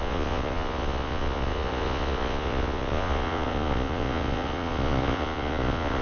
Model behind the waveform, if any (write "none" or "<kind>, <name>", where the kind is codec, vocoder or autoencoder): vocoder, Vocos